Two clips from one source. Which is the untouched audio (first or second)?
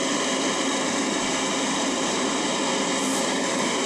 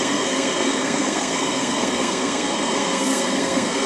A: first